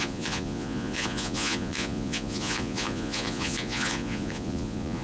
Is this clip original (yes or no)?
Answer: no